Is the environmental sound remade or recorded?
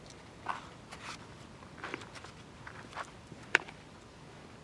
recorded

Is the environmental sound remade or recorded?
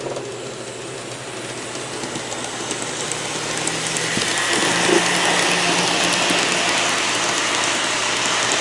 recorded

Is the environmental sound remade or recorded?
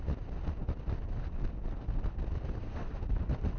recorded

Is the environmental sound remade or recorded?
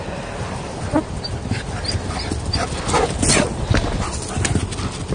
recorded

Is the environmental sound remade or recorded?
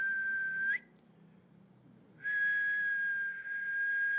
recorded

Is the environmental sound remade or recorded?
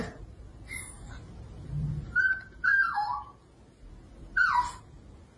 recorded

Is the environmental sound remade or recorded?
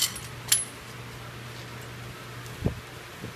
recorded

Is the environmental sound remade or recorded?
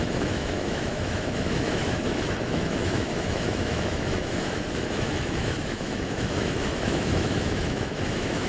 remade